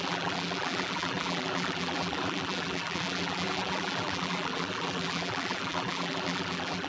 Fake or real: fake